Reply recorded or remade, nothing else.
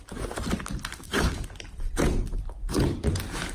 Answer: remade